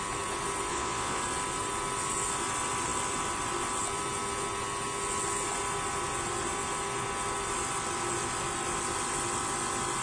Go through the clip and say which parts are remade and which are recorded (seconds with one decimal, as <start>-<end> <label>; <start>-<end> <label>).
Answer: 0.0-0.7 recorded; 0.7-1.2 remade; 1.2-10.0 recorded

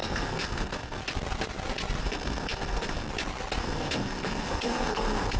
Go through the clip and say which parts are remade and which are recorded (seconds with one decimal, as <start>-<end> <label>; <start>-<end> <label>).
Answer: 0.0-1.0 remade; 1.0-2.0 recorded; 2.0-3.1 remade; 3.1-3.6 recorded; 3.6-5.4 remade

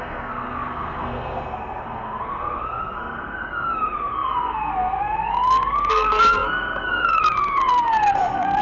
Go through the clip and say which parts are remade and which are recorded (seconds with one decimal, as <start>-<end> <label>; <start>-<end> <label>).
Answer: 0.0-8.6 remade